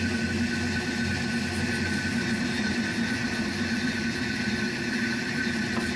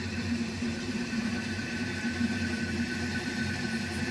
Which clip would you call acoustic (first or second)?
first